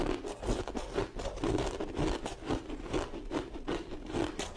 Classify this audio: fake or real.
real